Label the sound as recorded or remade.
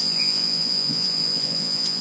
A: remade